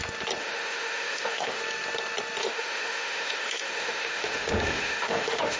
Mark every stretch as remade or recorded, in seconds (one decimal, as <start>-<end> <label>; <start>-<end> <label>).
0.0-0.4 recorded; 0.4-1.6 remade; 1.6-2.4 recorded; 2.4-5.6 remade